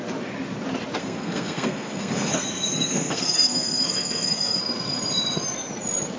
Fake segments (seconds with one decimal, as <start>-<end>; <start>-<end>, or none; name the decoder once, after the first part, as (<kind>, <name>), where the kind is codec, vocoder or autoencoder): 1.0-4.6 (codec, SNAC)